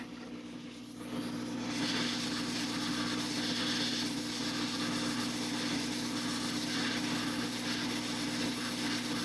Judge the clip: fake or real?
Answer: real